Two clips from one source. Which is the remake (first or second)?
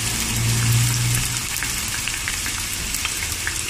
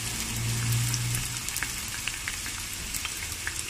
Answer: first